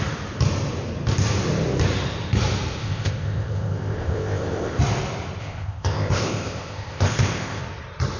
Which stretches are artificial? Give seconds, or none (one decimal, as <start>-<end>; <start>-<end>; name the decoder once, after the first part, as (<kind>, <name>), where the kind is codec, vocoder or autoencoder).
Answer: 2.8-4.8 (codec, ZipCodec); 5.4-7.6